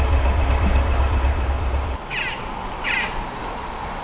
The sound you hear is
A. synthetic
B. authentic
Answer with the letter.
B